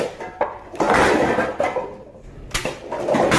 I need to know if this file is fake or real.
real